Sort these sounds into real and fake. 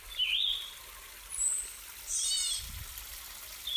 real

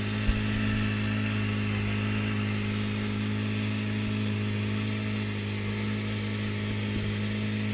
real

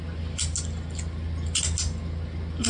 real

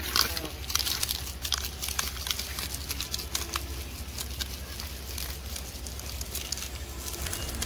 real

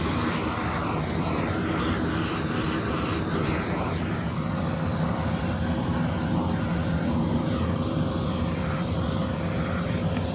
real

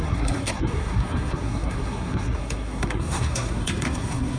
fake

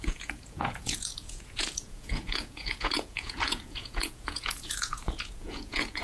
fake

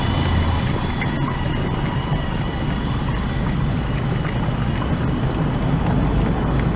real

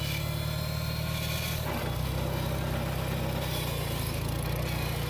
real